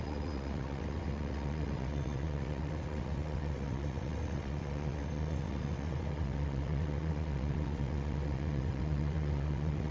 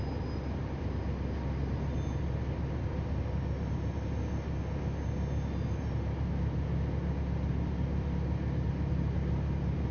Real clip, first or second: second